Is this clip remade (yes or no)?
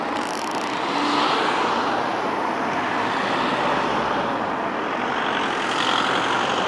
no